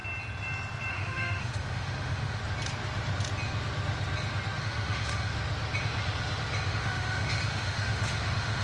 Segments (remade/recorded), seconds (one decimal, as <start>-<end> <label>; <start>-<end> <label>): 0.0-0.9 recorded; 0.9-2.4 remade; 2.4-4.6 recorded; 4.6-5.3 remade; 5.3-6.7 recorded; 6.7-8.6 remade